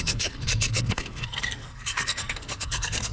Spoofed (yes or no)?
yes